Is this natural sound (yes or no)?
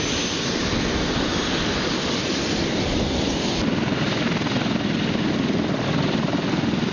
yes